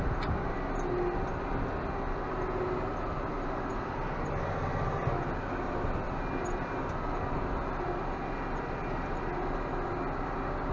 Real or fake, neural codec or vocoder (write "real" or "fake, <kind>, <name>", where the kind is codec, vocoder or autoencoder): real